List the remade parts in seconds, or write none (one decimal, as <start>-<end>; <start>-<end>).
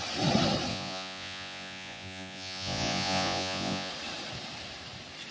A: 0.7-3.9